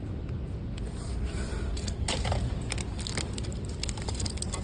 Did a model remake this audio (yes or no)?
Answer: no